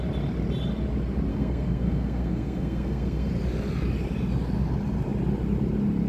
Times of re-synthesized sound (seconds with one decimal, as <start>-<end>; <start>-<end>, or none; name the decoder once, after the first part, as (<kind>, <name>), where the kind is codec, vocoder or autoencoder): 1.3-3.3 (codec, SNAC)